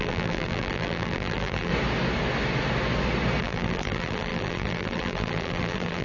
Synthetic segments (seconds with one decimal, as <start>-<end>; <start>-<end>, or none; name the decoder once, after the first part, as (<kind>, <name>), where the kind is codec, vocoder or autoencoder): 0.0-1.7 (vocoder, BigVGAN v2); 3.4-6.0